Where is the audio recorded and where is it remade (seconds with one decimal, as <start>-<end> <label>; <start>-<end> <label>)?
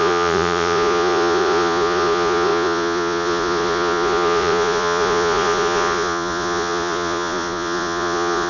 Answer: 0.0-8.5 remade